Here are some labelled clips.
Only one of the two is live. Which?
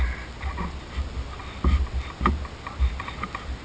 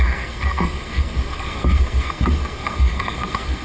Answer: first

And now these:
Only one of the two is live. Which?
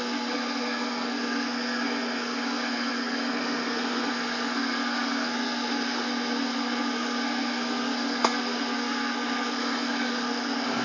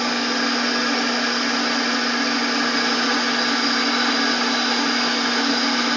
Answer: second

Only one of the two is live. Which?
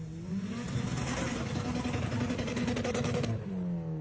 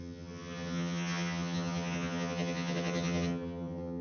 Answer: first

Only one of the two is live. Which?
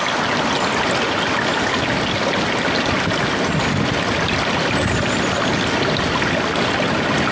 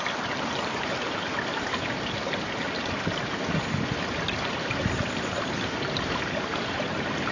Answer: first